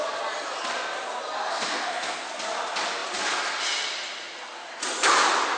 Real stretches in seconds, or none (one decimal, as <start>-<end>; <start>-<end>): 0.0-1.4; 2.3-5.6